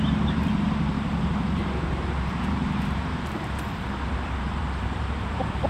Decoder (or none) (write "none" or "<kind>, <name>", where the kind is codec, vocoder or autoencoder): vocoder, BigVGAN v2